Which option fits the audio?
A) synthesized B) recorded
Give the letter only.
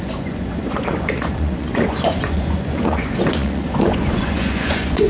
A